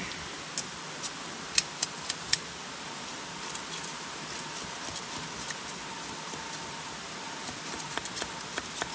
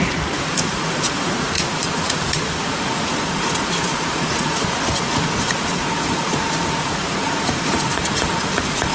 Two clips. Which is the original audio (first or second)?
first